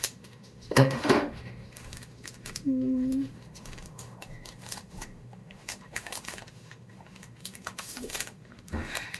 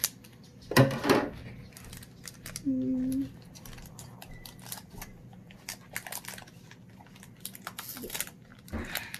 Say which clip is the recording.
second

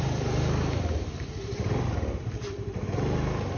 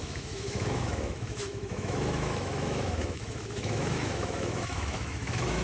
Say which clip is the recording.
first